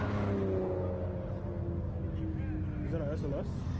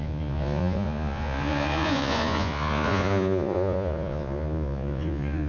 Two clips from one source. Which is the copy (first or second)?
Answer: second